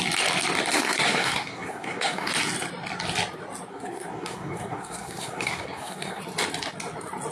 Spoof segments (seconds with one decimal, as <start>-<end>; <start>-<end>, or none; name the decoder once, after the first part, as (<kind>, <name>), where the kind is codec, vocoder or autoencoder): 0.7-2.3 (codec, SNAC); 3.7-6.2